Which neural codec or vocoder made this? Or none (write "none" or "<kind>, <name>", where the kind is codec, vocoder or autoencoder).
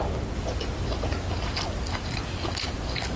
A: none